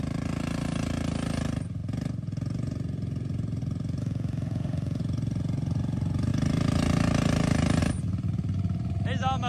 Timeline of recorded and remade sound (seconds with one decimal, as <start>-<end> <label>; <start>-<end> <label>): 0.0-4.0 recorded; 4.0-5.0 remade; 5.0-9.5 recorded